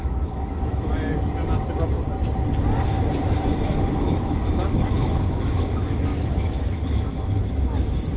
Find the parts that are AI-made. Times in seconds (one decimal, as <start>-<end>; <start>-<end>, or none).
0.0-0.9; 3.2-8.2